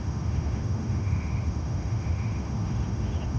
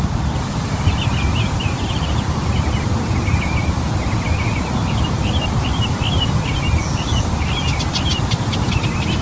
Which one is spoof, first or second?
first